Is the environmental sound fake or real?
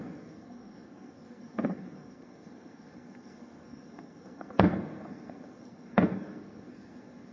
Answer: fake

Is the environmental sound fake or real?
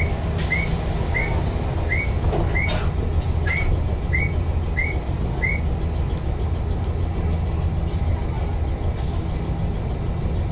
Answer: real